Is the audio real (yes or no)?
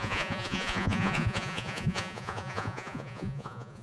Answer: no